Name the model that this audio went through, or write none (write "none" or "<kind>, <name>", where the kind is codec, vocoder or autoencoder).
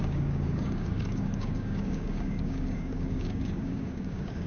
codec, DAC